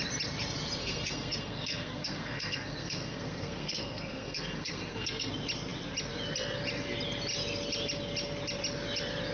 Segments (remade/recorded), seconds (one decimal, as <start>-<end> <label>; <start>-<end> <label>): 0.0-0.8 recorded; 0.8-5.3 remade; 5.3-9.3 recorded